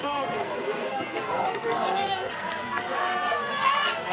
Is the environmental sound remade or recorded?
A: remade